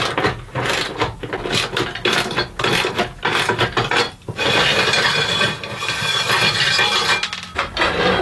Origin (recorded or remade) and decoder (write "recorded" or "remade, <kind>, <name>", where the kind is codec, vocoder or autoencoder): recorded